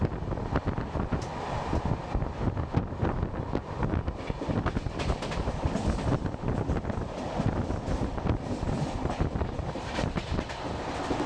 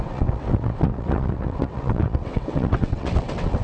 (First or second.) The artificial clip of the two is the second